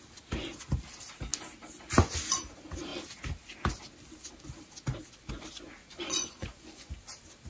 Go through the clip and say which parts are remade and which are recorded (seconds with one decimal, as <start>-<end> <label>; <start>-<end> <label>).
0.0-5.8 recorded; 5.8-6.9 remade; 6.9-7.5 recorded